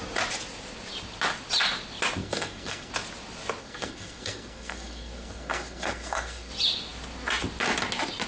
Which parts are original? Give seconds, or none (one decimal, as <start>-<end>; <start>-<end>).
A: 0.0-2.2; 2.9-3.6; 6.5-8.3

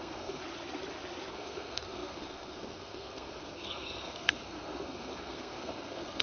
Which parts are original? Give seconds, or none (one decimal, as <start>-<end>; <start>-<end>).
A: 0.4-1.3

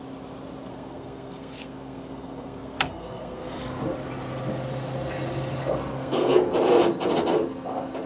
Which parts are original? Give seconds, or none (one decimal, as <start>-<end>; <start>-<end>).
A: 0.0-0.7; 3.6-5.9; 6.5-8.1

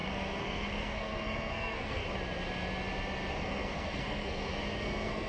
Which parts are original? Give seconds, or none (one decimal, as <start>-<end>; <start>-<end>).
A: 2.0-3.3

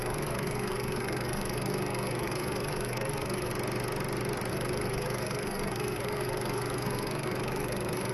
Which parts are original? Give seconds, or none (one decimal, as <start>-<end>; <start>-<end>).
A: 3.5-4.5